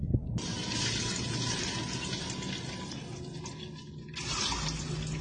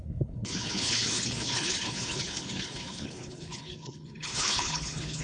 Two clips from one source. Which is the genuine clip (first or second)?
first